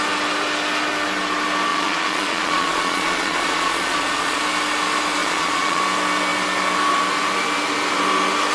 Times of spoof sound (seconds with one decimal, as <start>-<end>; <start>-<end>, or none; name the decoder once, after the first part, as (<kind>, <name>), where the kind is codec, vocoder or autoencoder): 1.7-4.4 (vocoder, Vocos); 5.2-5.8